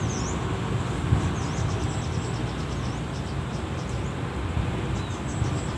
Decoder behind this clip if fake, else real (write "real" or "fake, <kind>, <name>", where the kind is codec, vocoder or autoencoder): real